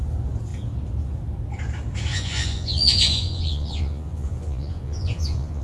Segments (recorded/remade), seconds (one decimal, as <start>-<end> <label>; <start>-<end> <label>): 0.0-2.1 recorded; 2.1-5.6 remade